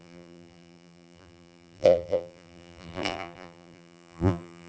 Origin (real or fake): fake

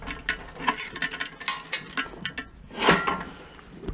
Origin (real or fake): real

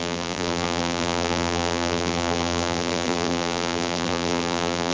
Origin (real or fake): fake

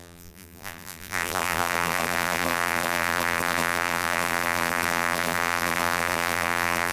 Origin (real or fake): fake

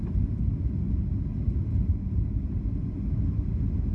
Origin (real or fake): real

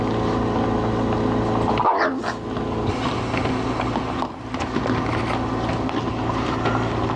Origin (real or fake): real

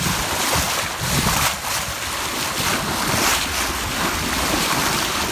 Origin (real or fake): real